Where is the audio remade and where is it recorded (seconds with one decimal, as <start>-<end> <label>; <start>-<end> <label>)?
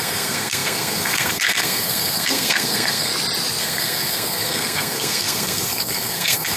0.0-3.1 remade; 3.1-3.6 recorded; 3.6-6.6 remade